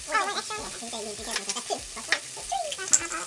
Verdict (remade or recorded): recorded